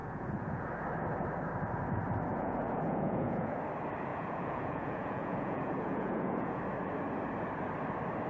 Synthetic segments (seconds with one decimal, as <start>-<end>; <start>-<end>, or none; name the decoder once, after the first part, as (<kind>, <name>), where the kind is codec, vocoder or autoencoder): 0.0-0.7 (vocoder, Vocos); 2.3-3.6; 4.1-6.6